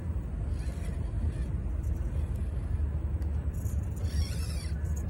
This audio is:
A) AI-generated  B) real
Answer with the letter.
B